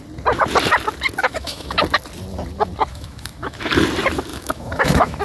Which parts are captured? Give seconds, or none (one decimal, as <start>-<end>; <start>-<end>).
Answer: 0.0-1.2; 1.8-2.9; 3.7-4.3